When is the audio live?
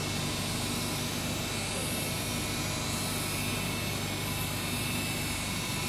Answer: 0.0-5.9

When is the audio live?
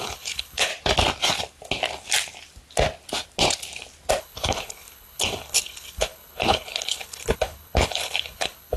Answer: 0.7-4.2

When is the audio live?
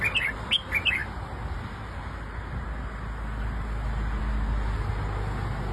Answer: 0.0-5.7